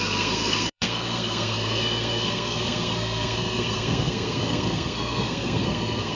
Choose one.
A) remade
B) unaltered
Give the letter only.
A